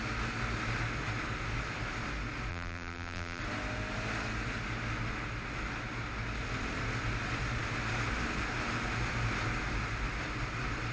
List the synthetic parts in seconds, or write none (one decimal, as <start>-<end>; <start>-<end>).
2.5-3.4